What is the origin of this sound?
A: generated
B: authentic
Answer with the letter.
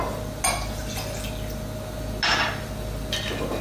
B